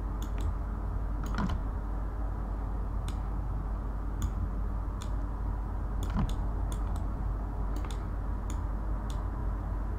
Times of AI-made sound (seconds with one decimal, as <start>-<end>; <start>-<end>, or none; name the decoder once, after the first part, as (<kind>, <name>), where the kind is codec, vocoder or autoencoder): none